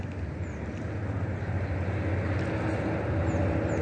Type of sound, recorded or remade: recorded